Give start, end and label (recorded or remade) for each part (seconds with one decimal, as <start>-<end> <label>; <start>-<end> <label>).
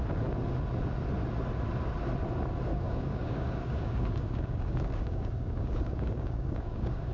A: 0.0-2.7 recorded; 2.7-7.1 remade